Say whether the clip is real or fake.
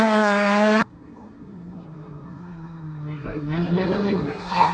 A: fake